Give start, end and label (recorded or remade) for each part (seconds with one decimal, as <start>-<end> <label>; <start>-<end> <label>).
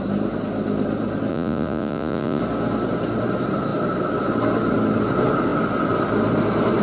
0.0-1.3 recorded; 1.3-2.4 remade; 2.4-6.8 recorded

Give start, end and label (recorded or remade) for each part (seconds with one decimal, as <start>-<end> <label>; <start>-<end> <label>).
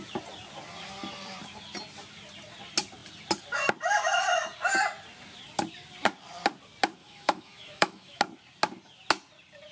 0.0-7.0 recorded; 7.0-8.2 remade; 8.2-9.7 recorded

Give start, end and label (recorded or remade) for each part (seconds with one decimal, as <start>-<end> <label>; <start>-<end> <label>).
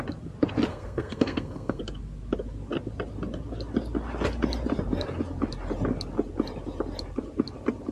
0.0-0.7 recorded; 0.7-1.8 remade; 1.8-7.9 recorded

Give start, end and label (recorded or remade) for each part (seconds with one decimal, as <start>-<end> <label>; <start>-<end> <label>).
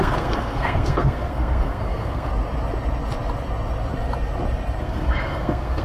0.0-2.3 remade; 2.3-4.8 recorded; 4.8-5.8 remade